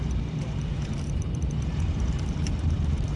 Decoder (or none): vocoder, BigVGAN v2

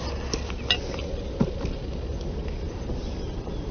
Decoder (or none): none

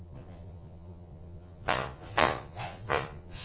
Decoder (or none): vocoder, Vocos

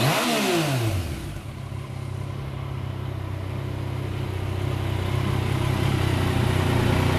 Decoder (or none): none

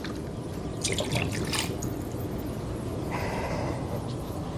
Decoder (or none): none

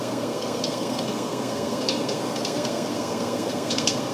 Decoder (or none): codec, SNAC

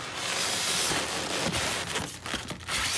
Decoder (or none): none